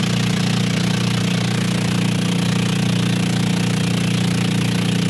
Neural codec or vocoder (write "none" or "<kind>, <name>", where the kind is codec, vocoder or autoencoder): none